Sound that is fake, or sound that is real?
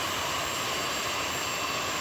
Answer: real